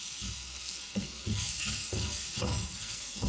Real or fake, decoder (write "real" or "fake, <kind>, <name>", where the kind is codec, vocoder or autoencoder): fake, codec, SNAC